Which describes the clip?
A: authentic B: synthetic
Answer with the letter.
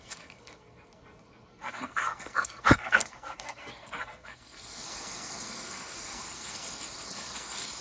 B